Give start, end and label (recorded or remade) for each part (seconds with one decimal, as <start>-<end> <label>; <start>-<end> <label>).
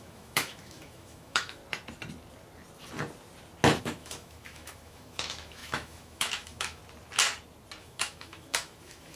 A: 0.0-1.6 remade; 1.6-3.8 recorded; 3.8-6.8 remade; 6.8-7.8 recorded; 7.8-9.2 remade